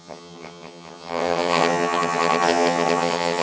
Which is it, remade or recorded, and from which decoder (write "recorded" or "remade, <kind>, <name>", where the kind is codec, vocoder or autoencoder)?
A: remade, vocoder, HiFi-GAN